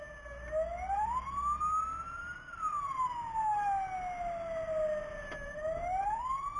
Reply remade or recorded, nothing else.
recorded